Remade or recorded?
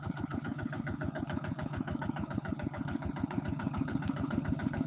remade